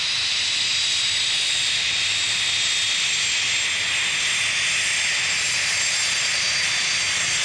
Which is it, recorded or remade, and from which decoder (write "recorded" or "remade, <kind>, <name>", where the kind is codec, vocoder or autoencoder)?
recorded